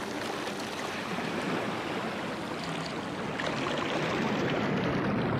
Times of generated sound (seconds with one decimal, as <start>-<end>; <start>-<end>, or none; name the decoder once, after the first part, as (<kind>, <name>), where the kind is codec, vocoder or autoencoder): none